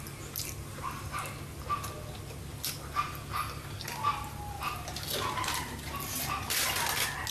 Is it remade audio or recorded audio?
recorded